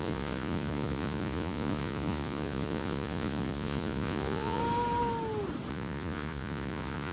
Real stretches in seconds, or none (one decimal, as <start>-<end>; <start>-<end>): 4.6-5.7